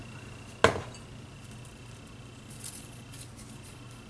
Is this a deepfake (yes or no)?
no